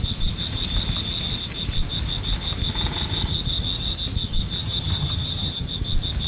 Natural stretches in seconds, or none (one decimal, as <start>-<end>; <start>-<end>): 0.0-4.6; 5.7-6.3